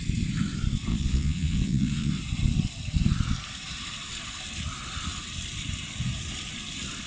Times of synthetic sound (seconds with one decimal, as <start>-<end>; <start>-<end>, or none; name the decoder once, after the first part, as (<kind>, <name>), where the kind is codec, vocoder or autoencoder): 0.9-2.1 (vocoder, Vocos)